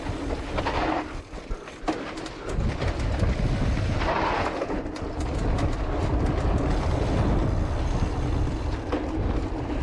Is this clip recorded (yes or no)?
yes